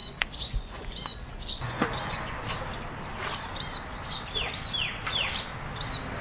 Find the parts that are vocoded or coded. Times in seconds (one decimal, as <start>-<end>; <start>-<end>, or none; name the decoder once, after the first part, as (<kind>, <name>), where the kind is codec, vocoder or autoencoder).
0.0-2.4 (vocoder, Vocos)